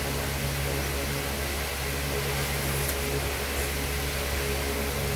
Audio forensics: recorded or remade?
recorded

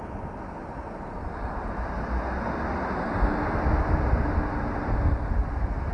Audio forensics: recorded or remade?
recorded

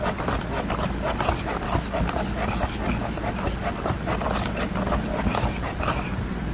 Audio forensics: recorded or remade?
recorded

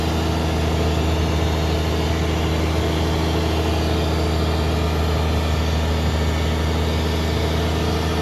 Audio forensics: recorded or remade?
recorded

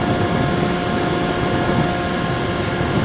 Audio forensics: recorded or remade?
recorded